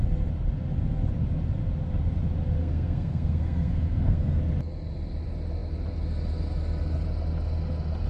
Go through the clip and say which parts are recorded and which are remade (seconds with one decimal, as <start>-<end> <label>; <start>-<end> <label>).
0.0-2.6 recorded; 2.6-4.4 remade; 4.4-8.1 recorded